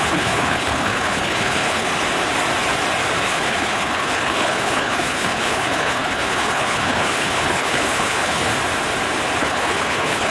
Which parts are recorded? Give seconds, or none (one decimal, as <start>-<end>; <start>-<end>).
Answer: 1.9-3.2; 8.5-9.4